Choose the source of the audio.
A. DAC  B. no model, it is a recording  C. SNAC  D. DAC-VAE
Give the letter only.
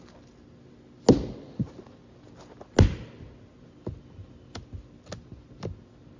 B